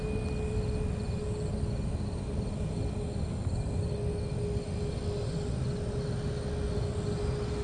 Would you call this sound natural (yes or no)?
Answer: yes